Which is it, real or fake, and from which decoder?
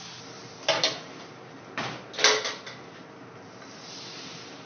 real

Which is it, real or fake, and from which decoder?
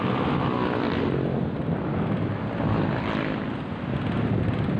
real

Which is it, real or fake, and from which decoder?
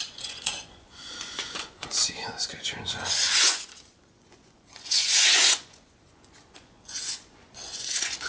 fake, vocoder, Vocos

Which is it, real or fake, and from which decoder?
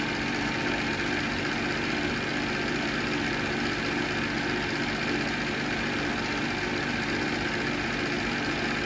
real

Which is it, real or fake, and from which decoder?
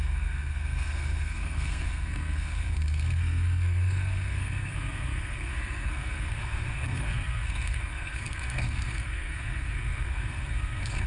fake, codec, SNAC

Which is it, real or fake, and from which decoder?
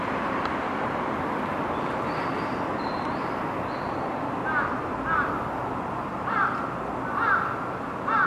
real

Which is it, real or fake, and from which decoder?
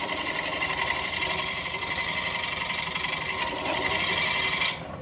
fake, vocoder, BigVGAN v2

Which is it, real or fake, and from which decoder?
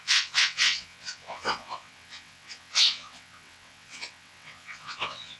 fake, vocoder, WaveNeXt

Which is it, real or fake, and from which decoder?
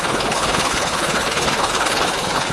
fake, codec, HILCodec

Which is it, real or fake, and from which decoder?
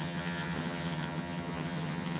fake, vocoder, HiFi-GAN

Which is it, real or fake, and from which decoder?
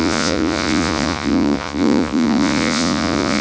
fake, vocoder, Vocos